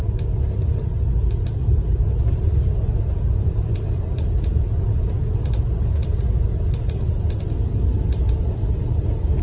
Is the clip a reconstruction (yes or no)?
no